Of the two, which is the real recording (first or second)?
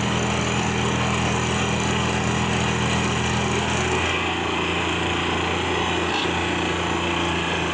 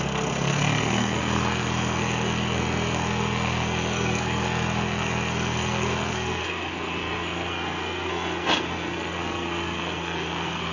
first